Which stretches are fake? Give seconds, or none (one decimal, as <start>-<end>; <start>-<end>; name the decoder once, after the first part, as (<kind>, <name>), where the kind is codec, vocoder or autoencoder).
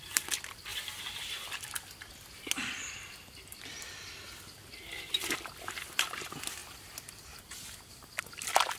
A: 0.0-0.7 (vocoder, BigVGAN v2); 5.1-6.6